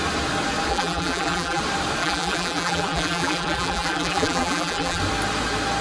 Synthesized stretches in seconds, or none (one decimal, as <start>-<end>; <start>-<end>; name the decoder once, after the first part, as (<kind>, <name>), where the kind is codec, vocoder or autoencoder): 0.7-1.6 (vocoder, BigVGAN v2); 2.0-5.0